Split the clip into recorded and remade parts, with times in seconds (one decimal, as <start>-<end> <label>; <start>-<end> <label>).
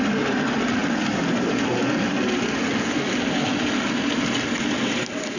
0.0-0.8 recorded; 0.8-1.4 remade; 1.4-5.4 recorded